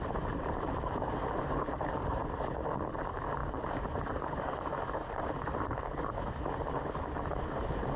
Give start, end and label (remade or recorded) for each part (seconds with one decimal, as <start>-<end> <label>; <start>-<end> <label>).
0.0-2.2 remade; 2.2-3.0 recorded; 3.0-8.0 remade